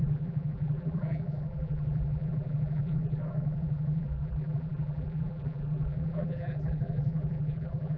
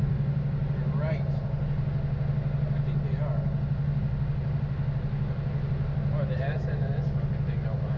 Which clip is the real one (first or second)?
second